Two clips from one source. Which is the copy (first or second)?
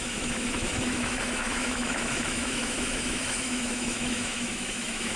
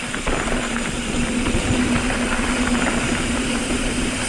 first